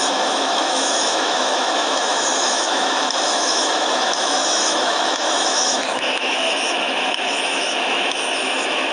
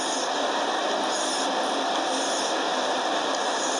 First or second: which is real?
second